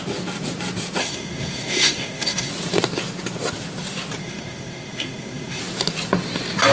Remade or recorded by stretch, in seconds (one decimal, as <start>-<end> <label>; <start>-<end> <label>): 0.0-1.0 recorded; 1.0-2.5 remade; 2.5-4.2 recorded; 4.2-5.6 remade; 5.6-6.7 recorded

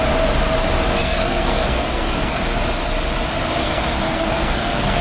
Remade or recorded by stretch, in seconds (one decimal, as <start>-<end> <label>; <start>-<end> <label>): 0.0-1.0 recorded; 1.0-2.4 remade; 2.4-3.6 recorded; 3.6-5.0 remade

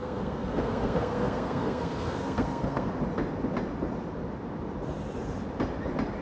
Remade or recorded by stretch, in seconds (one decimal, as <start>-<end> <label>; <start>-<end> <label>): 0.0-2.9 remade; 2.9-6.2 recorded